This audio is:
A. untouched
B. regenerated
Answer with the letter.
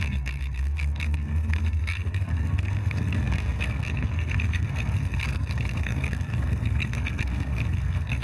B